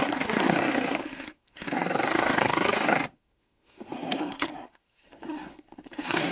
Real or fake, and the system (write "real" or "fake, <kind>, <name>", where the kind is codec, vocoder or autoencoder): fake, codec, SNAC